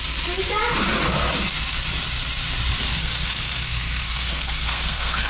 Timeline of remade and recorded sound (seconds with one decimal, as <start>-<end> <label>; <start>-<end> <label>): 0.0-2.9 recorded; 2.9-5.3 remade